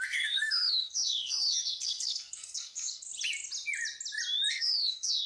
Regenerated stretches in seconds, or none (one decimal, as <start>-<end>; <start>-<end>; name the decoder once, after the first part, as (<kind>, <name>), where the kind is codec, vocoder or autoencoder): 0.0-3.1 (codec, SNAC); 4.5-5.3